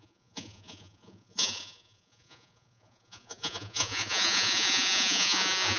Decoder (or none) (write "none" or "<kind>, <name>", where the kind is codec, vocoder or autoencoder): vocoder, Vocos